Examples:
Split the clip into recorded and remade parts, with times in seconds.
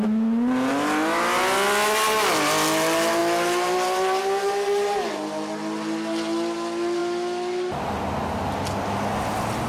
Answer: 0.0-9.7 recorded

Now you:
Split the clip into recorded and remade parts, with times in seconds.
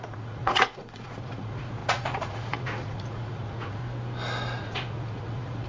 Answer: 0.0-3.8 remade; 3.8-4.6 recorded; 4.6-5.7 remade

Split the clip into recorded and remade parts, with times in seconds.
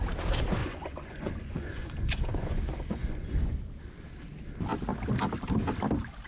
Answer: 0.0-0.6 recorded; 0.6-3.6 remade; 3.6-6.3 recorded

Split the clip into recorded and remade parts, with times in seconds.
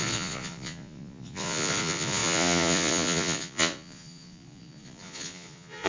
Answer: 0.0-5.9 remade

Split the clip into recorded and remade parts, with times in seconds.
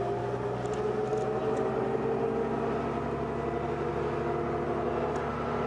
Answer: 0.0-5.7 recorded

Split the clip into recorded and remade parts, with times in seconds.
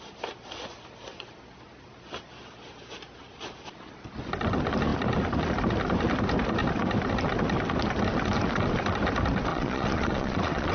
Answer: 0.0-9.5 recorded; 9.5-10.7 remade